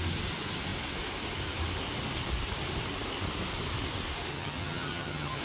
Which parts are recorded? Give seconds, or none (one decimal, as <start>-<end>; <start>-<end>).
0.0-4.3